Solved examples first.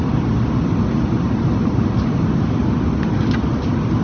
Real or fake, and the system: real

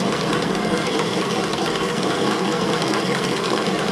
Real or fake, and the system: fake, codec, SNAC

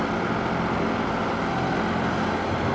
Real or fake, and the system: real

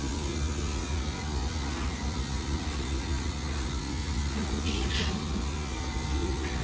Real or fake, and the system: fake, vocoder, Vocos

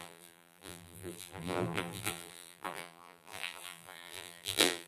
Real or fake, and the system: fake, vocoder, BigVGAN v2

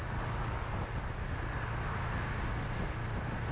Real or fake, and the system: real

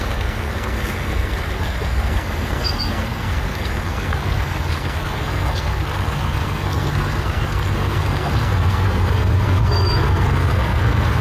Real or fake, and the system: fake, codec, SNAC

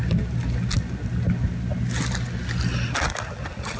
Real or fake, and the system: real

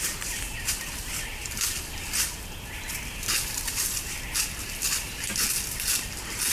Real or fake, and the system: real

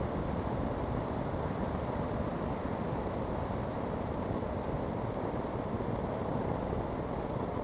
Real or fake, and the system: real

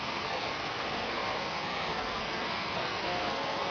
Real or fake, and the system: fake, codec, SNAC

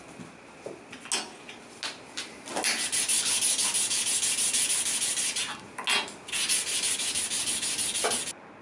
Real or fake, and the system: real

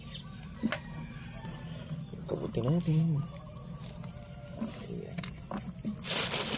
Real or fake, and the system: real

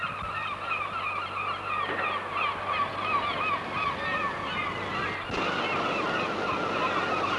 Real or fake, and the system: real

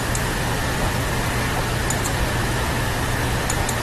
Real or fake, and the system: real